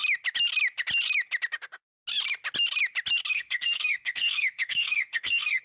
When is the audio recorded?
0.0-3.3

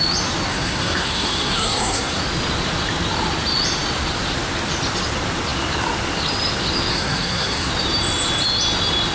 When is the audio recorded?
0.0-0.5; 2.2-6.9; 7.7-9.1

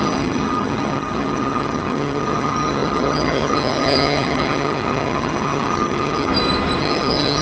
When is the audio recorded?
6.3-6.8

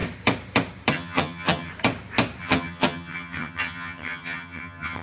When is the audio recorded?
0.0-0.9; 1.7-2.4